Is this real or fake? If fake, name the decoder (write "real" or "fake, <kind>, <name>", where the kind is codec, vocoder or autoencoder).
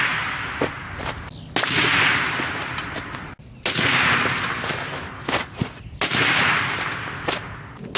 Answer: real